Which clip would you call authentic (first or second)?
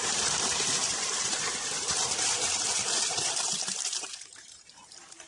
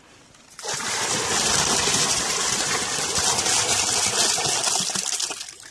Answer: second